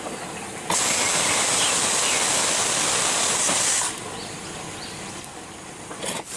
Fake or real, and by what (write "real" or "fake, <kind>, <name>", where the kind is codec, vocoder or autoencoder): real